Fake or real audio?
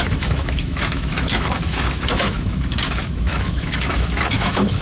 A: fake